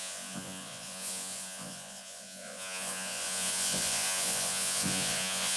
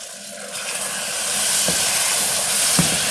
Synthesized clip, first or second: first